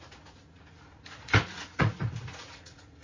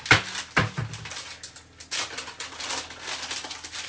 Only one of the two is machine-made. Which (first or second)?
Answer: first